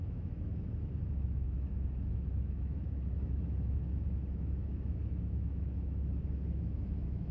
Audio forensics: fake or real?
fake